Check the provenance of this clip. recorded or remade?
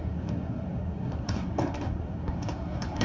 remade